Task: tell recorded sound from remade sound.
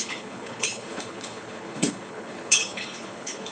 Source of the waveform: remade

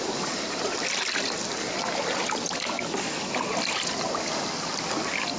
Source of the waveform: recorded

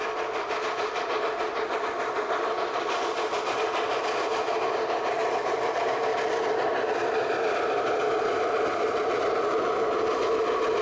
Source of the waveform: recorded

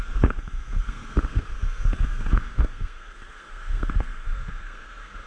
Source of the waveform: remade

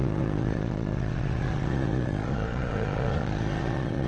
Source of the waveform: remade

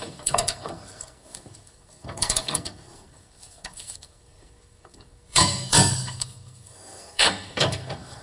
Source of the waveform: remade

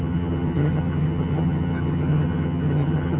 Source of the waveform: remade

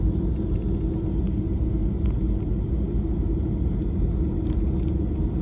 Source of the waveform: recorded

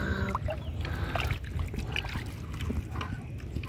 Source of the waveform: recorded